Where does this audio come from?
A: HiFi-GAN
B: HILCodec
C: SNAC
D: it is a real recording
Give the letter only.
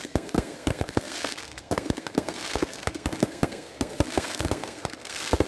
C